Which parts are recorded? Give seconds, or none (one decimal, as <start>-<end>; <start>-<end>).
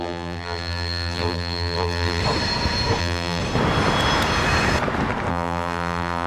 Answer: 2.2-3.0; 3.4-5.3